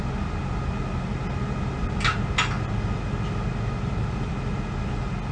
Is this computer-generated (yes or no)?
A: no